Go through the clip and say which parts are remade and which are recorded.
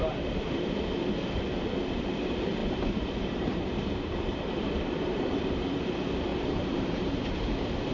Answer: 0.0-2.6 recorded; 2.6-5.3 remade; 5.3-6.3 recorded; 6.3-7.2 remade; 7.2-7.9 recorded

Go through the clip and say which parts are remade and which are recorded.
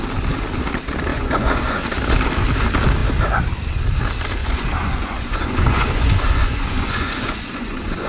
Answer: 0.0-1.1 recorded; 1.1-1.8 remade; 1.8-4.4 recorded; 4.4-8.1 remade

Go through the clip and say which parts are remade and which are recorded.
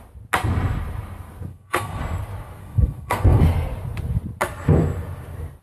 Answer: 0.0-1.5 recorded; 1.5-2.0 remade; 2.0-2.6 recorded; 2.6-3.4 remade; 3.4-5.6 recorded